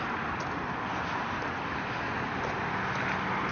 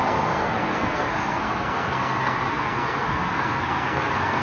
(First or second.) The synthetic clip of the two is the second